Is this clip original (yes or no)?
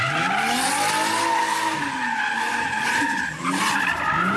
yes